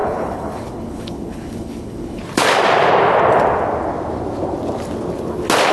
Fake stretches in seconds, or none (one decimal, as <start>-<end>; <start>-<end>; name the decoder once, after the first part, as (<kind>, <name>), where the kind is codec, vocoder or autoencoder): 0.0-2.2 (codec, HILCodec)